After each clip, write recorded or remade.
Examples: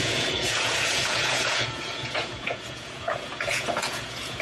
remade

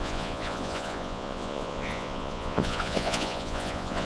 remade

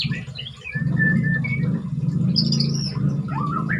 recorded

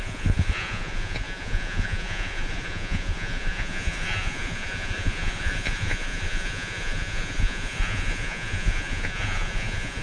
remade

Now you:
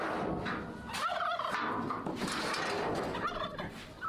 recorded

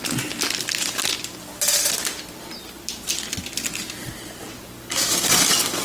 recorded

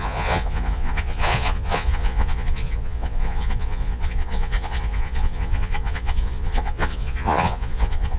remade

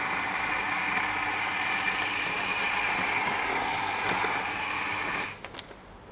recorded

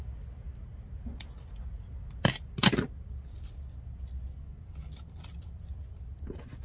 recorded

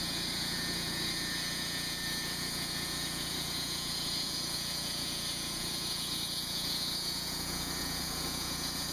remade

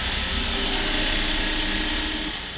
recorded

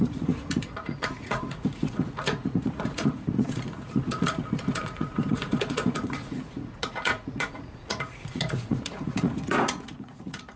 remade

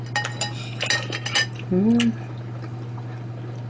recorded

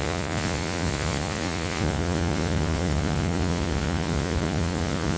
remade